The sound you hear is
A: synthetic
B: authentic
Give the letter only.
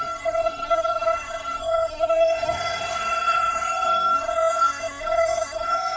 A